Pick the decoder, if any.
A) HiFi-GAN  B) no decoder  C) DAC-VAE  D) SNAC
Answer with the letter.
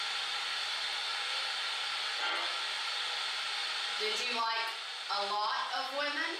B